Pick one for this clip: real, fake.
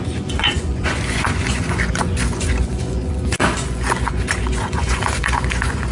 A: fake